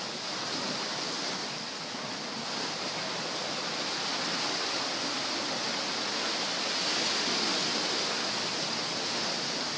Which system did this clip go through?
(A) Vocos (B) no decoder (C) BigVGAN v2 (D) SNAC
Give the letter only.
B